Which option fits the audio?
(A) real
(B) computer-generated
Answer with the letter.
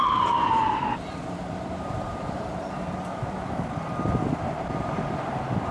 B